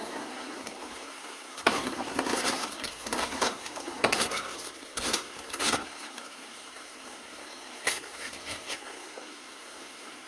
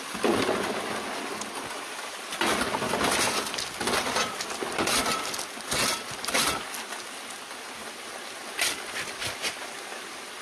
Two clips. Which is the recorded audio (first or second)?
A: second